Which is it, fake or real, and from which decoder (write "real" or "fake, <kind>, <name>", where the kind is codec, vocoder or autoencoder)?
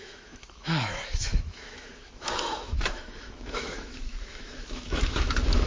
fake, autoencoder, DAC-VAE